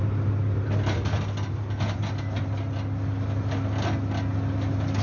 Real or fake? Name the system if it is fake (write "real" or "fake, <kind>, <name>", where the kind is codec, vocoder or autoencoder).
real